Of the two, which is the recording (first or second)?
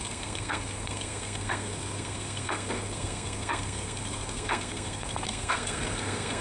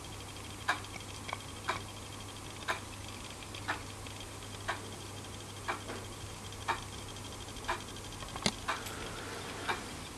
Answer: second